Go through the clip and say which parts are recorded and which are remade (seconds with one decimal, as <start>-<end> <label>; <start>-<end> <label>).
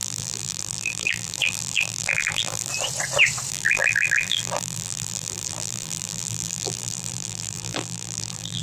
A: 0.0-2.7 remade; 2.7-3.5 recorded; 3.5-8.6 remade